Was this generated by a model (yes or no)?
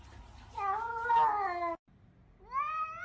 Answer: no